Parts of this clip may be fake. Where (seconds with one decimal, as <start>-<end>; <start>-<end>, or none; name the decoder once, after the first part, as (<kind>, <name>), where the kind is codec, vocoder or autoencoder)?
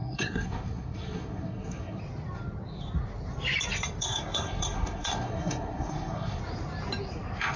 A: 0.0-2.0 (codec, SNAC); 4.0-6.4